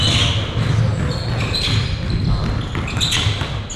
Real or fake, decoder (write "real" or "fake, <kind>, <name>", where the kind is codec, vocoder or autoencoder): real